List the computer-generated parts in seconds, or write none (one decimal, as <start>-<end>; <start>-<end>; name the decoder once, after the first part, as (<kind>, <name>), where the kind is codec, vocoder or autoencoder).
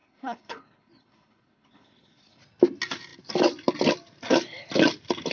0.0-2.4 (codec, HILCodec)